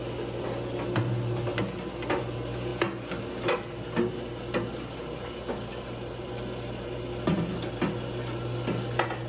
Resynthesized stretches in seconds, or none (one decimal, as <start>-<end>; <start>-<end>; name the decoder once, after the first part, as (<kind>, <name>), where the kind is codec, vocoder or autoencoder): none